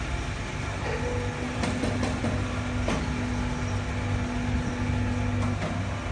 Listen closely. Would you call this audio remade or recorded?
recorded